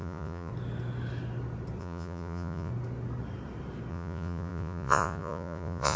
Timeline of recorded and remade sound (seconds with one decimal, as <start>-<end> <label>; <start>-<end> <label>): 0.0-0.5 remade; 0.5-1.8 recorded; 1.8-2.7 remade; 2.7-3.9 recorded; 3.9-6.0 remade

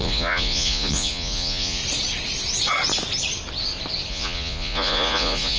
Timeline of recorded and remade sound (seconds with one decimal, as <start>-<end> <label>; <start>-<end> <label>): 0.0-1.8 remade; 1.8-4.1 recorded; 4.1-5.6 remade

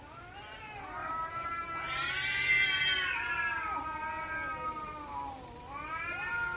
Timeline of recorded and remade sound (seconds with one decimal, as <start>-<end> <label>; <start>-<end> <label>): 0.0-1.0 recorded; 1.0-2.1 remade; 2.1-6.6 recorded

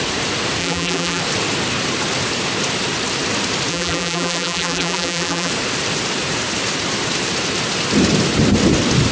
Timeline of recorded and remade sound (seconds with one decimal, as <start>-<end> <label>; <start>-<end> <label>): 0.0-0.6 recorded; 0.6-1.2 remade; 1.2-3.7 recorded; 3.7-5.5 remade; 5.5-9.1 recorded

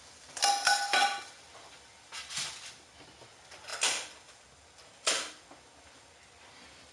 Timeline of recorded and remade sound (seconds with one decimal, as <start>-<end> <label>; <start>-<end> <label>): 0.0-6.9 recorded